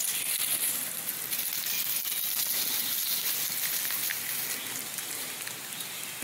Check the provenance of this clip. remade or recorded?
recorded